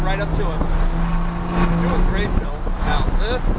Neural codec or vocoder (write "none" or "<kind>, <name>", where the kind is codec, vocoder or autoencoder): none